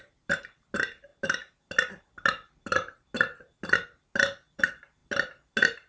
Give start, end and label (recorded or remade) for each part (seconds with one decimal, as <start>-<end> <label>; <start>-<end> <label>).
0.0-5.9 recorded